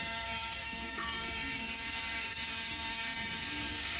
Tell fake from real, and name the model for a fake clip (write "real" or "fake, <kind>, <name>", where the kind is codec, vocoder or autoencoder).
fake, codec, SNAC